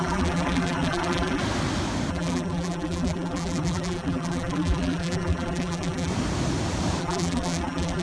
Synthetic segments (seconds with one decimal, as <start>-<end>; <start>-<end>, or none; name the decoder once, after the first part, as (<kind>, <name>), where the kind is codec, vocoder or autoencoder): 0.0-1.4 (vocoder, BigVGAN v2); 2.1-6.1; 7.0-8.0